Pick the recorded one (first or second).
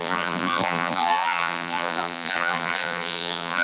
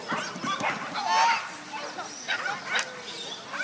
second